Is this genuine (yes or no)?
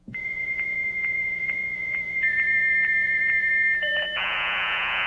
no